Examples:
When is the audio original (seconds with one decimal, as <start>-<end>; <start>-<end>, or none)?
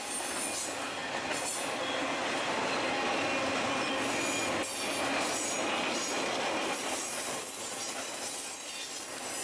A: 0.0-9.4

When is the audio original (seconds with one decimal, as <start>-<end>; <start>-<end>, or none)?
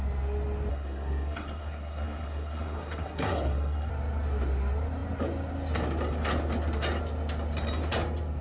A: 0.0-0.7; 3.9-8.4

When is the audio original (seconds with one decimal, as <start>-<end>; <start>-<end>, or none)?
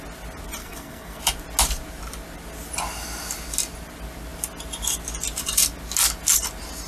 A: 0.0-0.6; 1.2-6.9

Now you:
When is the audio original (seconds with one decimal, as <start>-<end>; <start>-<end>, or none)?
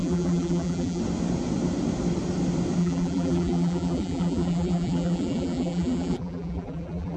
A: 1.0-2.8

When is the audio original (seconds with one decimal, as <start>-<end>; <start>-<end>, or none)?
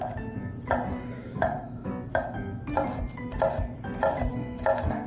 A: 0.0-1.2; 1.9-4.3